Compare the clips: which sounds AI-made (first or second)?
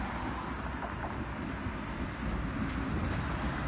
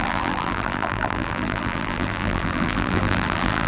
second